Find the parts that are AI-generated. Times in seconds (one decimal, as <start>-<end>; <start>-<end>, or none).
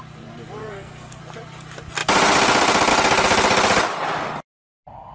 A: 0.6-1.2